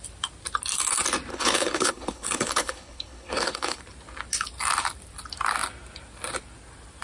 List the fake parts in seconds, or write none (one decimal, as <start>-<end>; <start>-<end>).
1.3-3.8